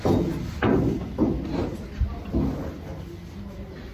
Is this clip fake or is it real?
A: real